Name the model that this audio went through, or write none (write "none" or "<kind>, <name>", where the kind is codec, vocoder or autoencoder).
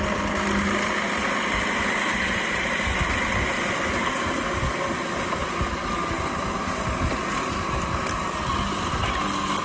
none